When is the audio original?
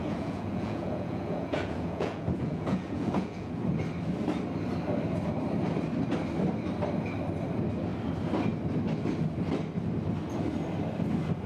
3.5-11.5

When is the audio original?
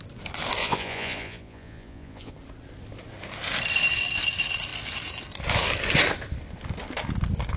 0.0-0.6; 2.3-7.6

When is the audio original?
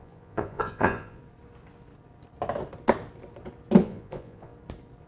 1.2-3.8; 4.5-5.1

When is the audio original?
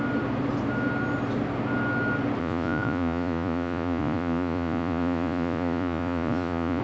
0.0-2.4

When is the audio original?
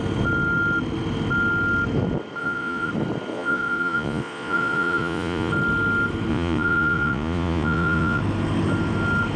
0.0-2.4; 2.9-3.3; 5.5-6.3; 8.2-9.4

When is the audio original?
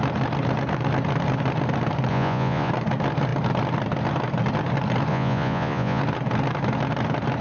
0.0-2.1; 2.7-5.1; 6.0-7.4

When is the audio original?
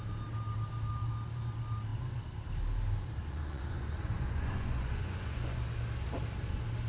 0.0-3.2; 5.6-6.9